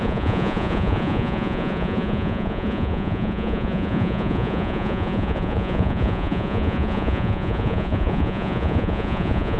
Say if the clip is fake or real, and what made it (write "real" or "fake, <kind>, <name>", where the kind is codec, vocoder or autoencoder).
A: fake, vocoder, Vocos